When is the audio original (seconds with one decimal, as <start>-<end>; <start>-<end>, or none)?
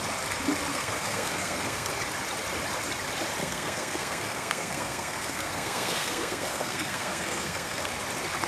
0.0-0.7; 1.9-3.4; 7.9-8.5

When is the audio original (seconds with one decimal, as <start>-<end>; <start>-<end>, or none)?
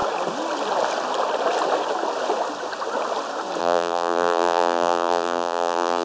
0.0-3.6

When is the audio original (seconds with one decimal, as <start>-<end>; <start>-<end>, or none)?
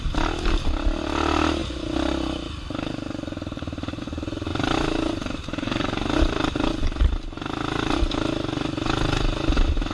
0.0-1.6; 4.0-4.5; 6.5-9.9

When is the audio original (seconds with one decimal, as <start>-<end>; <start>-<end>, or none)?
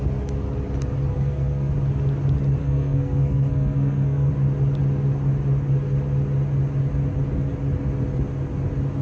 0.0-1.1; 1.7-2.6; 4.3-9.0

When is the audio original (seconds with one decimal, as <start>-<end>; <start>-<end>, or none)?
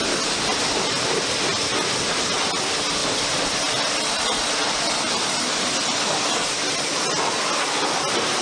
0.0-8.4